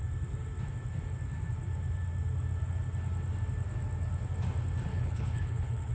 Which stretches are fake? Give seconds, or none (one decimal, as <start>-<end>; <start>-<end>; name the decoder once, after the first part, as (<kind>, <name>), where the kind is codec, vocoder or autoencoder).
4.9-5.9 (codec, HILCodec)